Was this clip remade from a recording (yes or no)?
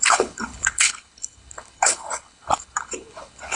yes